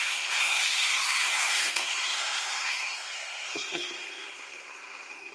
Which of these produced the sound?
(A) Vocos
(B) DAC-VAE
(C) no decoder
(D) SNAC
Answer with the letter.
D